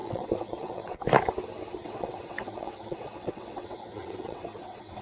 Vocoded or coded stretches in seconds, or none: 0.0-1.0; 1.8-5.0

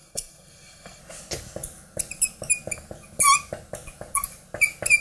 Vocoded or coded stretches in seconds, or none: 0.0-1.0

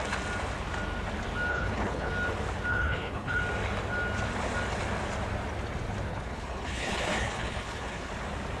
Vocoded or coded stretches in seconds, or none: 1.5-2.1; 2.7-3.4; 6.1-8.1

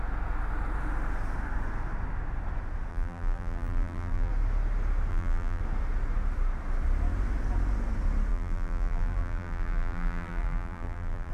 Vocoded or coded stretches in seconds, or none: 2.9-4.3; 5.1-5.6; 8.3-11.3

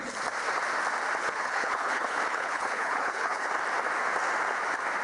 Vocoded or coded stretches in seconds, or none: 1.2-3.5